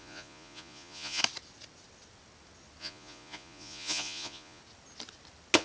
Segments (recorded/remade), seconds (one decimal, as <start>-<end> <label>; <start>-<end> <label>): 0.0-1.2 remade; 1.2-2.8 recorded; 2.8-4.6 remade; 4.6-5.6 recorded